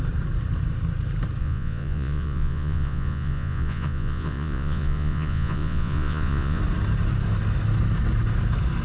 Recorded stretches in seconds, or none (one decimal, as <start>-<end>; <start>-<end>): 0.0-1.4; 6.6-8.8